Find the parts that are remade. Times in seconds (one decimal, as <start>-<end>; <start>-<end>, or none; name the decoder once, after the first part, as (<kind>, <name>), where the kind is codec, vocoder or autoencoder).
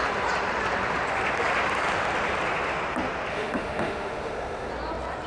3.3-4.7 (autoencoder, DAC-VAE)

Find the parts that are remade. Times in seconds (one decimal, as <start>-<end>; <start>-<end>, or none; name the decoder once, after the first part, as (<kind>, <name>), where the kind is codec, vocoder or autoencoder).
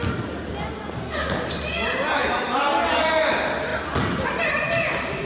none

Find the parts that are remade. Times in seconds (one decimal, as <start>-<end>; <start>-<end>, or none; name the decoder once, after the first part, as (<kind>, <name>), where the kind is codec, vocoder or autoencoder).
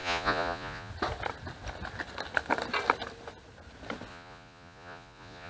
0.0-0.9 (vocoder, Vocos); 4.1-5.5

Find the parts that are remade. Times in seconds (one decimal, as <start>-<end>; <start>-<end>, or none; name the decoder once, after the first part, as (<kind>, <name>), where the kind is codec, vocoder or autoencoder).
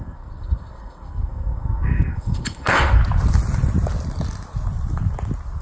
0.0-3.0 (codec, SNAC)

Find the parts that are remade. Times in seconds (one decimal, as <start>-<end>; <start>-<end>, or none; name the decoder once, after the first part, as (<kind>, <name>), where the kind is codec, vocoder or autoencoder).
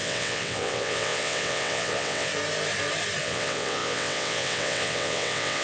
0.0-2.3 (vocoder, WaveNeXt); 3.2-5.6